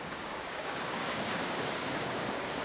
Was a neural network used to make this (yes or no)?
yes